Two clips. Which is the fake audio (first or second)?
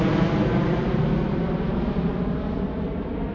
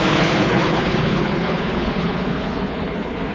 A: second